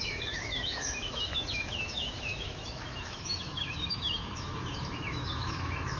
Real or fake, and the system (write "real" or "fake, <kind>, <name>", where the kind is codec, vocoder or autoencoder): fake, autoencoder, DAC-VAE